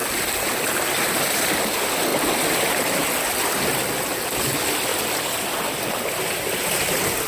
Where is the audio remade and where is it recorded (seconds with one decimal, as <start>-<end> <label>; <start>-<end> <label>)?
0.0-1.6 recorded; 1.6-2.1 remade; 2.1-4.4 recorded; 4.4-4.9 remade; 4.9-5.4 recorded; 5.4-7.3 remade

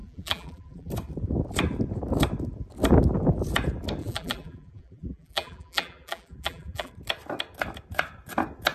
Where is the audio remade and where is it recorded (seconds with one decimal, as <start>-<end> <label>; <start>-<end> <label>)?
0.0-0.9 remade; 0.9-4.0 recorded; 4.0-6.9 remade; 6.9-8.7 recorded

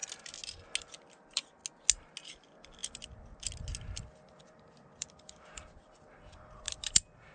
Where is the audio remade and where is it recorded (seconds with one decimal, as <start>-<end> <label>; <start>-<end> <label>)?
0.0-0.8 recorded; 0.8-1.6 remade; 1.6-2.3 recorded; 2.3-2.8 remade; 2.8-4.0 recorded; 4.0-7.3 remade